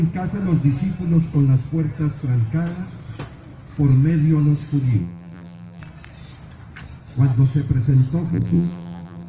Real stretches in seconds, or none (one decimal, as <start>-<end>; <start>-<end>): 0.0-5.0; 5.8-8.3